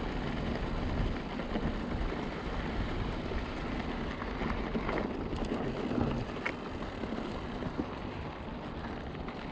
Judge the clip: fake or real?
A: real